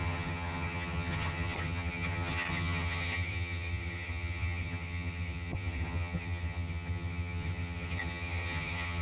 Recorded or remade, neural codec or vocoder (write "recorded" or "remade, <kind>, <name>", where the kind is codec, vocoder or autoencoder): remade, vocoder, HiFi-GAN